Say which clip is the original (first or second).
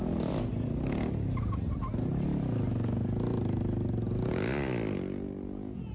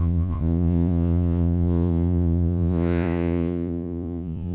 first